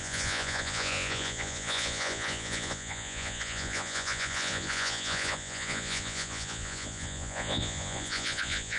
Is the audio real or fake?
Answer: fake